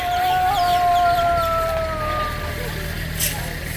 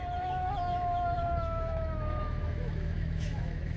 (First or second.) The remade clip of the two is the second